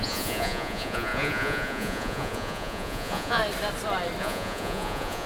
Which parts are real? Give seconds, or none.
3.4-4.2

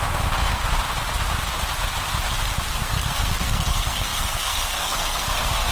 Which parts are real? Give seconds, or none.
0.6-2.7

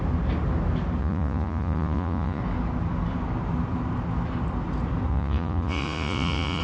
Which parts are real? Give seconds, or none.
0.0-1.0; 2.4-5.1

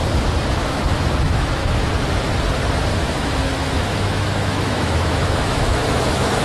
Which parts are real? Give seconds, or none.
0.0-0.5; 1.6-3.0

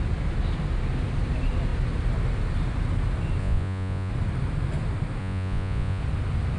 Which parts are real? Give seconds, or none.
0.0-3.4; 4.1-5.2; 6.0-6.6

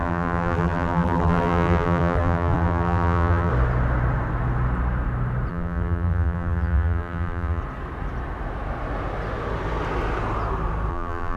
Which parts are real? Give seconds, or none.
3.5-5.5; 7.6-10.9

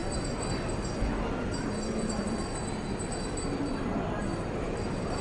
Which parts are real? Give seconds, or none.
none